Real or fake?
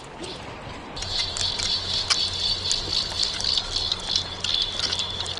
real